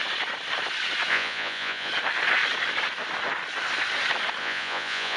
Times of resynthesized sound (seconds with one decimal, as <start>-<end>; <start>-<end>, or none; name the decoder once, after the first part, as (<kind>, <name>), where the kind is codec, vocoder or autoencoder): 1.1-1.9 (vocoder, Vocos); 4.4-5.2